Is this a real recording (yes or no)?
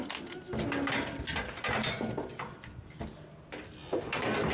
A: yes